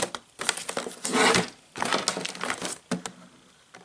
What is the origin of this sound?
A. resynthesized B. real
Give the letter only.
B